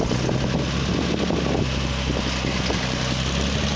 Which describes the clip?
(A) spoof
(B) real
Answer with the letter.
B